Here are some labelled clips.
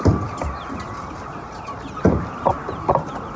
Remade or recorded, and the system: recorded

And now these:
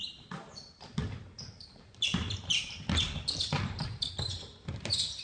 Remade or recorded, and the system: recorded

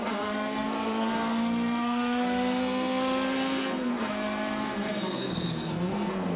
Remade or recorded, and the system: remade, codec, SNAC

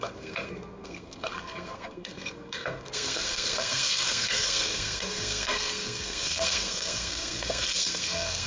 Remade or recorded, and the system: remade, codec, SNAC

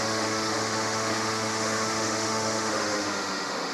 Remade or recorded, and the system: remade, autoencoder, DAC-VAE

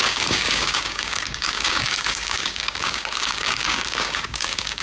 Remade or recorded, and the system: remade, codec, DAC